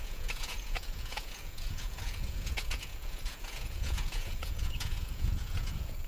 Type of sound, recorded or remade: remade